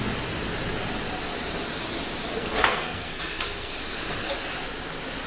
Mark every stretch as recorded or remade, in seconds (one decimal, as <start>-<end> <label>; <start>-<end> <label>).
0.0-2.3 recorded; 2.3-4.3 remade; 4.3-5.3 recorded